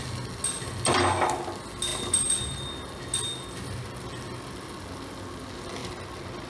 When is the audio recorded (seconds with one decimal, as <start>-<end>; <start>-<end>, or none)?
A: 0.0-6.5